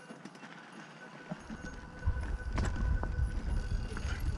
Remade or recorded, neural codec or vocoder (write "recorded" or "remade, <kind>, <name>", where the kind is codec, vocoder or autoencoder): recorded